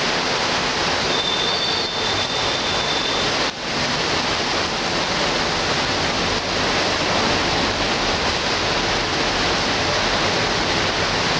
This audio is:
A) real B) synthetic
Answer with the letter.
A